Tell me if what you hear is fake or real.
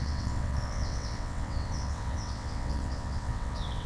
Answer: fake